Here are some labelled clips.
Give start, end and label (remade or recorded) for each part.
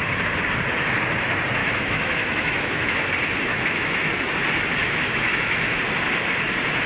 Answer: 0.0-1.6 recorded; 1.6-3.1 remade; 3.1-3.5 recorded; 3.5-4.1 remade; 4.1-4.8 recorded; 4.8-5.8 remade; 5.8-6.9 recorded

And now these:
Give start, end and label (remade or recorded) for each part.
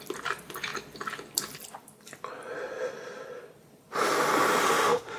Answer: 0.0-4.6 recorded; 4.6-5.2 remade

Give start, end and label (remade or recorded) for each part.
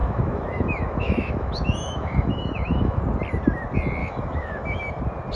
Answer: 0.0-3.0 remade; 3.0-4.0 recorded; 4.0-5.0 remade; 5.0-5.4 recorded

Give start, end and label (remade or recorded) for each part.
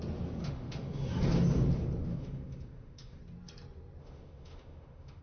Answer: 0.0-0.4 recorded; 0.4-1.2 remade; 1.2-2.1 recorded; 2.1-3.2 remade; 3.2-4.0 recorded; 4.0-5.2 remade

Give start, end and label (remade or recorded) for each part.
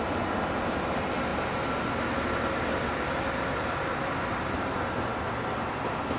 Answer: 0.0-6.2 recorded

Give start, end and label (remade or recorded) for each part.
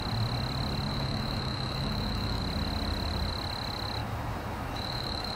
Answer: 0.0-0.9 recorded; 0.9-2.4 remade; 2.4-4.0 recorded; 4.0-5.4 remade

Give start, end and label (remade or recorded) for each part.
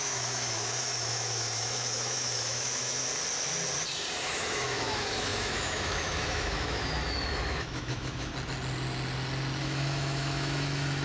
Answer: 0.0-3.1 remade; 3.1-4.2 recorded; 4.2-8.3 remade; 8.3-9.6 recorded; 9.6-11.0 remade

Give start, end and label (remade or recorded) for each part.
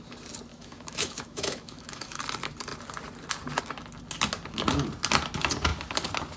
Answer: 0.0-0.5 recorded; 0.5-2.2 remade; 2.2-6.4 recorded